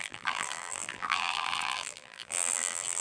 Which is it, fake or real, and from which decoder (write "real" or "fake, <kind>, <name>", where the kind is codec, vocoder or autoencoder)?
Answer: fake, vocoder, BigVGAN v2